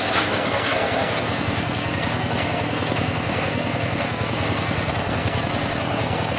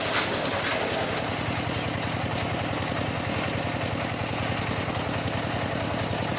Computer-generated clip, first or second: first